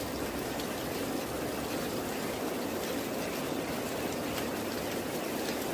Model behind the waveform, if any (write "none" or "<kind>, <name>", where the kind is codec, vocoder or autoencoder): none